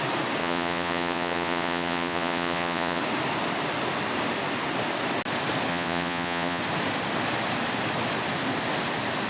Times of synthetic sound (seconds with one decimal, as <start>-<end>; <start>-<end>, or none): 0.4-3.0; 5.7-6.6